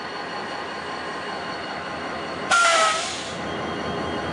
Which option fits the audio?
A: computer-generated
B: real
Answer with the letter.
B